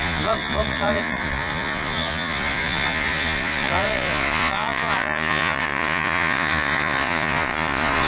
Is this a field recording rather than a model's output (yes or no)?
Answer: no